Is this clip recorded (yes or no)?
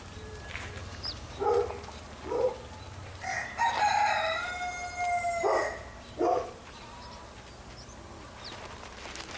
yes